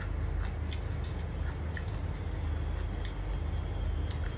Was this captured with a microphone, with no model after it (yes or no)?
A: yes